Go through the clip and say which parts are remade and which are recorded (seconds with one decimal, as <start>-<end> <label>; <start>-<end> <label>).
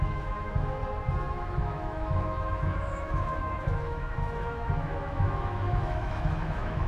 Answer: 0.0-0.8 remade; 0.8-1.3 recorded; 1.3-6.9 remade